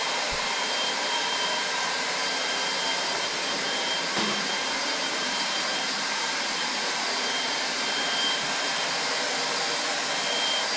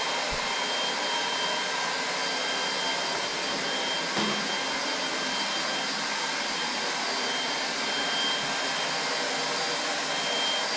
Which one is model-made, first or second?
first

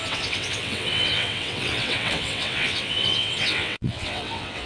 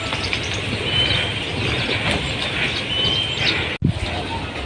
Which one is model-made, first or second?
first